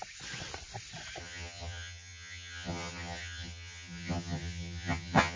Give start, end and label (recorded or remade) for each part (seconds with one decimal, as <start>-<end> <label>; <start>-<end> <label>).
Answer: 0.0-1.2 recorded; 1.2-5.4 remade